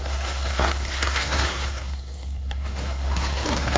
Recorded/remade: remade